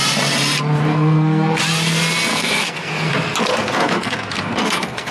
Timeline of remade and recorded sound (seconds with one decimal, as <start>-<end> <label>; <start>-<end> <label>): 0.0-0.9 recorded; 0.9-1.6 remade; 1.6-2.3 recorded; 2.3-3.1 remade; 3.1-3.5 recorded; 3.5-5.1 remade